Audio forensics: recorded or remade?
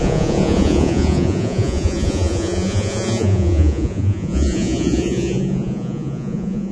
remade